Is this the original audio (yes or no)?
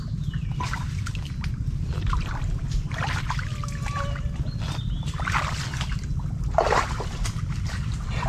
yes